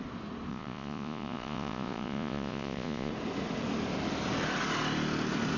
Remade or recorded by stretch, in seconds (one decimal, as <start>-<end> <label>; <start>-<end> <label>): 0.0-0.5 recorded; 0.5-3.1 remade; 3.1-5.6 recorded